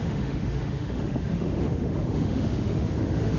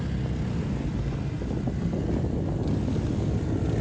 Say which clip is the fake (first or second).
first